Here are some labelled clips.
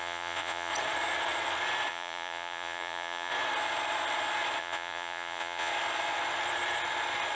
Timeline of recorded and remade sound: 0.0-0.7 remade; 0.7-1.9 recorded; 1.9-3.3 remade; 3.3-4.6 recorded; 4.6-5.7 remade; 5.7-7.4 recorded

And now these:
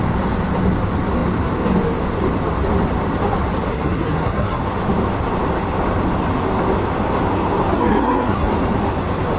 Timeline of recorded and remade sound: 0.0-3.7 recorded; 3.7-4.6 remade; 4.6-7.7 recorded; 7.7-8.5 remade; 8.5-9.4 recorded